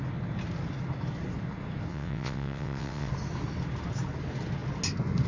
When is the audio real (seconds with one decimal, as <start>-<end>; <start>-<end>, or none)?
0.0-1.9; 3.1-5.3

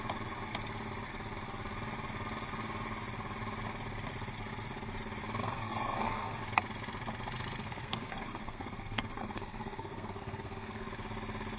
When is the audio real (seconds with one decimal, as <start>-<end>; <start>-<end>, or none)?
0.0-5.4; 6.4-7.6; 10.9-11.6

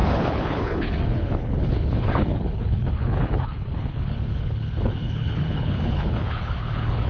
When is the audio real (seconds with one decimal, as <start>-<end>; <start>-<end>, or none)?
none